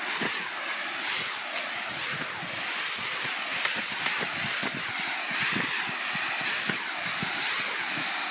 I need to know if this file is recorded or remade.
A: recorded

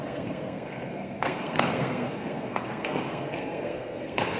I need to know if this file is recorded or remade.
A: remade